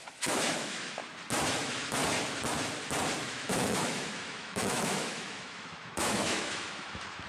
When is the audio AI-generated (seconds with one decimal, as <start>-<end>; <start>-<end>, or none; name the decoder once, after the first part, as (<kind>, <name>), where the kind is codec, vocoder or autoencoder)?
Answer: 0.0-1.0 (autoencoder, DAC-VAE); 1.5-2.0; 3.2-7.3